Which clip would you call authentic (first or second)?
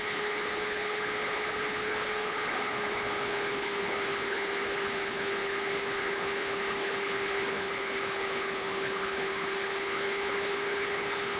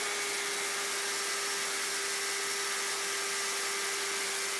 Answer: second